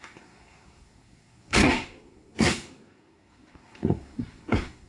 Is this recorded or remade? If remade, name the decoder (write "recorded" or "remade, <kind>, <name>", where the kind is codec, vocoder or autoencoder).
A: remade, codec, SNAC